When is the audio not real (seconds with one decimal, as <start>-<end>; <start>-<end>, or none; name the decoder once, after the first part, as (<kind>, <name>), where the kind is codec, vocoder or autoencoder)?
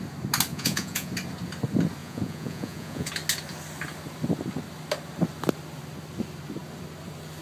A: 0.5-1.1 (vocoder, Vocos); 2.0-3.1